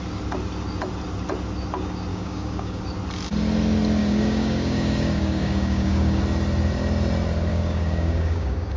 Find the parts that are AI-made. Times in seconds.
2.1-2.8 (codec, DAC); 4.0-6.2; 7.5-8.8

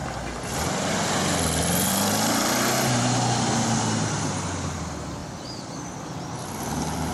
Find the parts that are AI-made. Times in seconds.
none

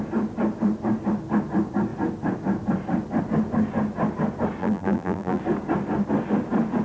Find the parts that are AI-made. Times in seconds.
4.6-5.4 (vocoder, BigVGAN v2)

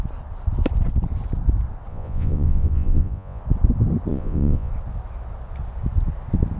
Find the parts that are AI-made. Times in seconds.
1.9-3.4 (vocoder, Vocos); 4.1-4.7

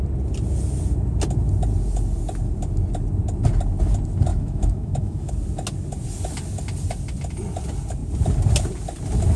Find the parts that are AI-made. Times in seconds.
4.3-5.3 (autoencoder, DAC-VAE)

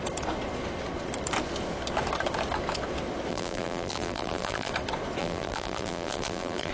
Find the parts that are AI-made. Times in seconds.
3.3-4.7 (vocoder, BigVGAN v2); 5.2-6.7